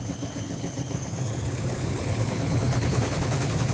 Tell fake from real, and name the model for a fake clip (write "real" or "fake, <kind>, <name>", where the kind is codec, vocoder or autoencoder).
fake, codec, HILCodec